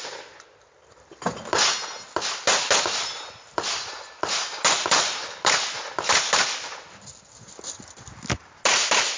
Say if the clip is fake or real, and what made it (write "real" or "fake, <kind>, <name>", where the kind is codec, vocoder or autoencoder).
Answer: real